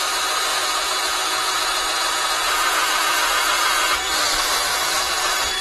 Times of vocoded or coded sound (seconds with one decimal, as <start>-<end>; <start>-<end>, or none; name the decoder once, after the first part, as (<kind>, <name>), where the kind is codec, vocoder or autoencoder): 0.5-3.9 (vocoder, Vocos)